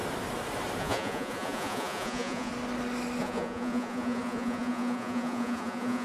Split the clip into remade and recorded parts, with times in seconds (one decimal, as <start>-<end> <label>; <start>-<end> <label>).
0.0-0.8 recorded; 0.8-2.5 remade; 2.5-3.2 recorded; 3.2-6.0 remade